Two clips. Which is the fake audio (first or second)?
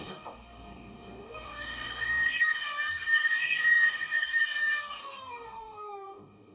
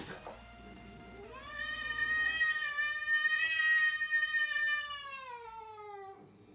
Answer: first